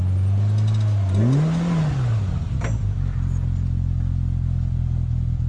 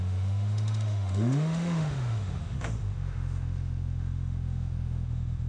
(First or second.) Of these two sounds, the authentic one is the first